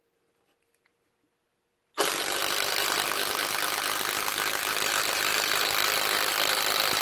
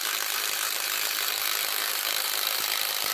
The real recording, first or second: first